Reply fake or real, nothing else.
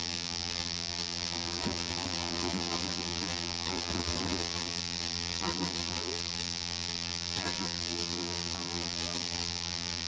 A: fake